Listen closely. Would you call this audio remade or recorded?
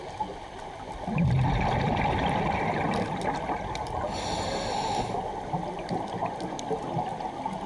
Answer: recorded